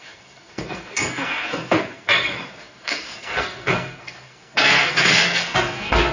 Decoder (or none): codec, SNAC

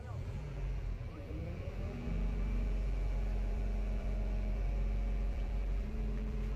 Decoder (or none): vocoder, BigVGAN v2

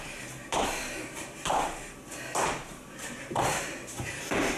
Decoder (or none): vocoder, BigVGAN v2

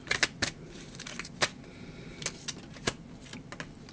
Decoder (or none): none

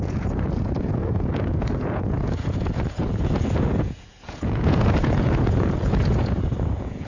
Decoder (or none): vocoder, Vocos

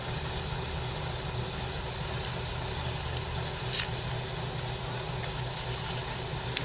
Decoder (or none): none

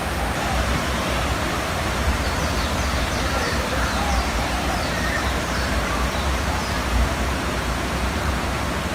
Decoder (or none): vocoder, BigVGAN v2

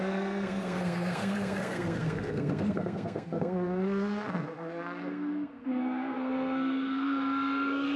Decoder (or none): codec, SNAC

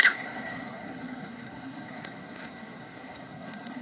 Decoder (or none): codec, SNAC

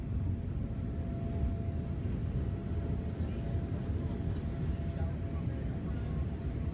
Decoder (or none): none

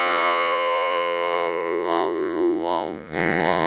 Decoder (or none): vocoder, Vocos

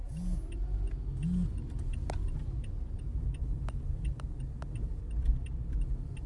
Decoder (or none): none